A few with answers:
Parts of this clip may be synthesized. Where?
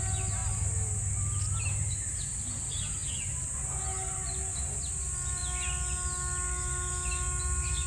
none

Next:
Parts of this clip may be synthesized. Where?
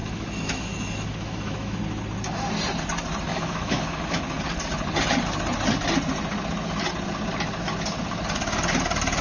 0.0-1.8 (autoencoder, DAC-VAE); 3.3-4.0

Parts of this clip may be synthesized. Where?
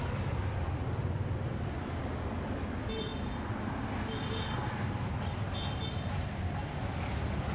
none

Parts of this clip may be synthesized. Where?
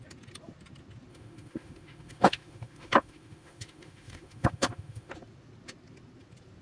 1.1-5.1 (autoencoder, DAC-VAE)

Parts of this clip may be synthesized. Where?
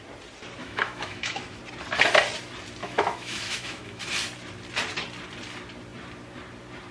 0.6-1.6 (autoencoder, DAC-VAE); 2.8-4.0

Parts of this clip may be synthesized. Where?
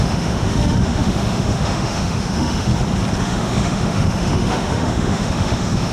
0.0-2.7 (autoencoder, DAC-VAE); 3.2-5.9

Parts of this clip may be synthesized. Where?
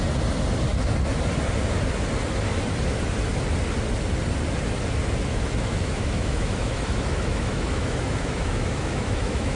5.3-9.6 (autoencoder, DAC-VAE)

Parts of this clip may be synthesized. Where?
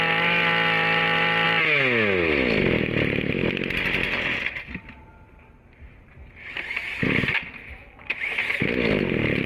none